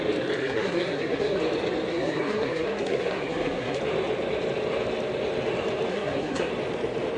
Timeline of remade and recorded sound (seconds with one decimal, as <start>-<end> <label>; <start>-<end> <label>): 0.0-0.4 recorded; 0.4-1.4 remade; 1.4-1.9 recorded; 1.9-3.8 remade; 3.8-5.9 recorded; 5.9-6.5 remade; 6.5-7.2 recorded